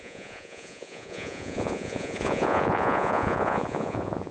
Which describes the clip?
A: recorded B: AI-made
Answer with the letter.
B